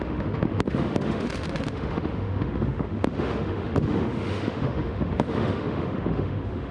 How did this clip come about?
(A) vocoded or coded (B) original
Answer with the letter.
A